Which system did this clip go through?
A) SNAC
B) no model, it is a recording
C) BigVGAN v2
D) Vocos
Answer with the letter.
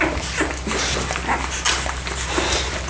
B